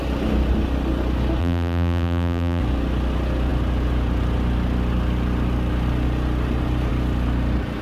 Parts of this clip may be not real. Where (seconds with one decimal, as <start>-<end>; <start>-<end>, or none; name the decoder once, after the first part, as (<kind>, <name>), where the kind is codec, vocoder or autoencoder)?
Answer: 1.4-2.6 (vocoder, BigVGAN v2)